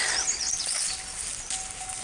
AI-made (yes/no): no